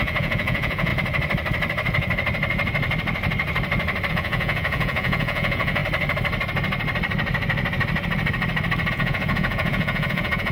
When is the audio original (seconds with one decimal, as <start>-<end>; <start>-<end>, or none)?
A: 0.9-4.1; 5.8-8.9